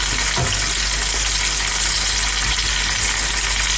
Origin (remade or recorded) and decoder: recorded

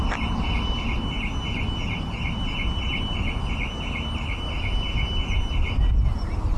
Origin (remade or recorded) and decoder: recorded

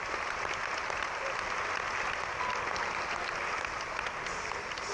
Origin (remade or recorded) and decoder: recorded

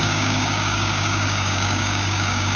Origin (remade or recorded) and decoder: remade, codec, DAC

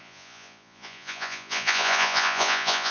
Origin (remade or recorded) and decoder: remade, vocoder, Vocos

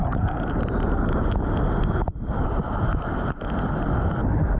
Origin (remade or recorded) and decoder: recorded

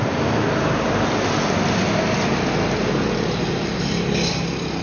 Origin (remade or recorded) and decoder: recorded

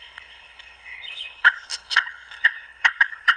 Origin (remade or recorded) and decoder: remade, codec, HILCodec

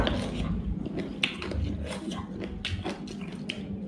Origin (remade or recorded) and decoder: recorded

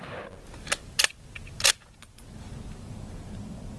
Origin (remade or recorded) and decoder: recorded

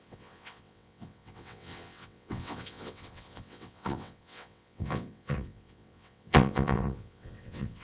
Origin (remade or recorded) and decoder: remade, vocoder, WaveNeXt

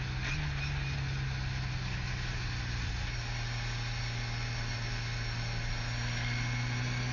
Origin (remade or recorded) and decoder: recorded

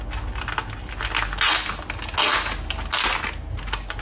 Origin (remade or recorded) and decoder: recorded